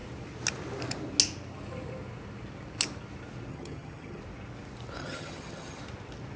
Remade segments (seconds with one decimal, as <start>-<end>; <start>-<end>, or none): 3.5-4.2; 5.0-5.8